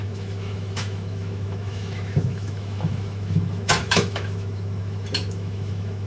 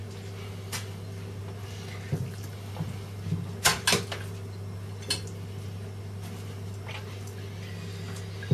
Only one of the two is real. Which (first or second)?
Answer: second